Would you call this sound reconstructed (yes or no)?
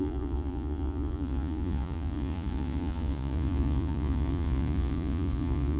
yes